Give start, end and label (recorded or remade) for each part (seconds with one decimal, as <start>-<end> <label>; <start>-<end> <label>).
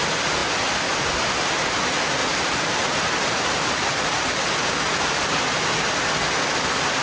0.0-2.2 recorded; 2.2-5.0 remade; 5.0-7.0 recorded